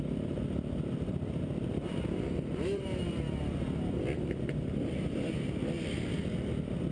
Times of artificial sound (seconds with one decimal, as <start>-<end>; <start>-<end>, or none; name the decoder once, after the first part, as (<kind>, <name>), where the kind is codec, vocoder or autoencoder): 0.0-6.9 (vocoder, BigVGAN v2)